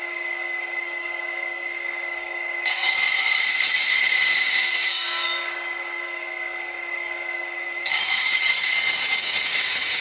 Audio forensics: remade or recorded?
remade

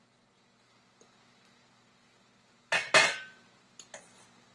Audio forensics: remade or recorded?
recorded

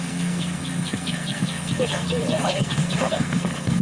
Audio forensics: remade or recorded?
remade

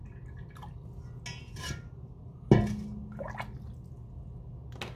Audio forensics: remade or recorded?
recorded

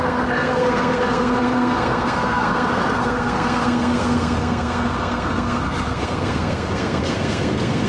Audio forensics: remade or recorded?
remade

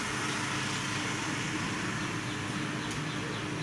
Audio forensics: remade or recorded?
recorded